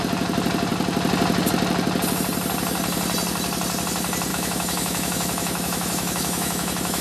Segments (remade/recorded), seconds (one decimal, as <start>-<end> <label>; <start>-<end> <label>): 0.0-4.3 recorded; 4.3-7.0 remade